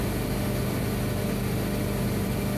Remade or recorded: recorded